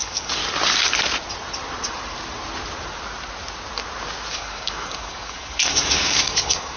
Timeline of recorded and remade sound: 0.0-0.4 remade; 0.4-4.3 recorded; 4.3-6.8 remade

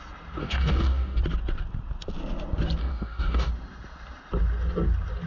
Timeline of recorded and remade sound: 0.0-0.4 recorded; 0.4-1.2 remade; 1.2-2.8 recorded; 2.8-3.5 remade; 3.5-5.3 recorded